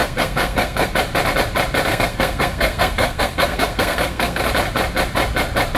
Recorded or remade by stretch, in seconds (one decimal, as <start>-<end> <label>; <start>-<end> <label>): 0.0-0.9 remade; 0.9-1.9 recorded; 1.9-4.4 remade; 4.4-5.8 recorded